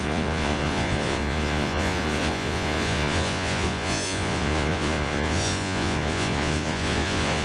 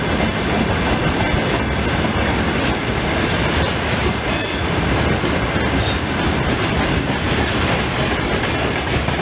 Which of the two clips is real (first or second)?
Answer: second